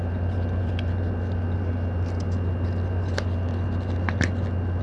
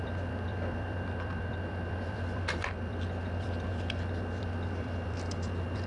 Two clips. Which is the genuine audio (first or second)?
first